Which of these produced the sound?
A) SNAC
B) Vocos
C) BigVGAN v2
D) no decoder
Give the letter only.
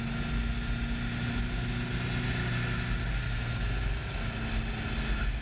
D